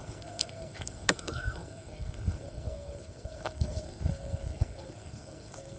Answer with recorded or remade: remade